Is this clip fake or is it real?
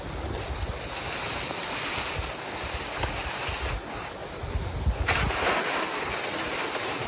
real